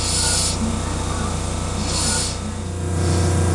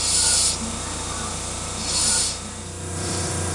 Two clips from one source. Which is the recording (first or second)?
first